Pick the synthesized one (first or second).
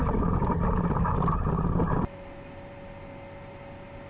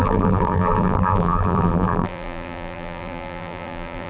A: second